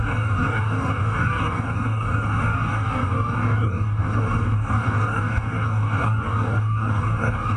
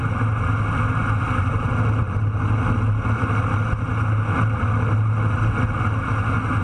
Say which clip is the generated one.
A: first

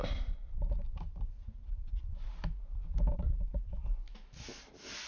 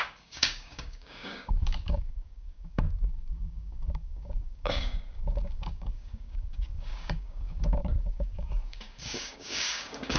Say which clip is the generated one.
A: second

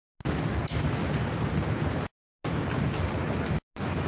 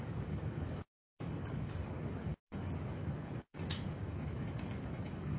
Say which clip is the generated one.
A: second